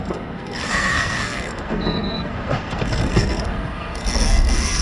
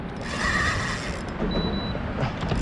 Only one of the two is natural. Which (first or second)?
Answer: second